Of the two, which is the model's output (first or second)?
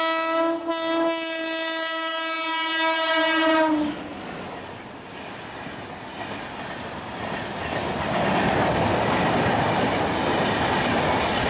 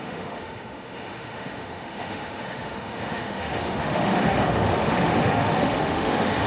second